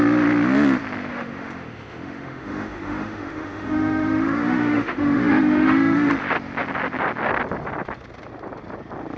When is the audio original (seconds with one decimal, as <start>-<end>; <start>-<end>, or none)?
0.0-1.1; 6.1-9.2